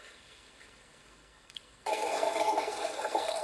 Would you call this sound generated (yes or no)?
yes